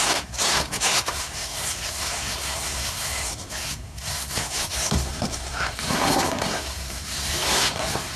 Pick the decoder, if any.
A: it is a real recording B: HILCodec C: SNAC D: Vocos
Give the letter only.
C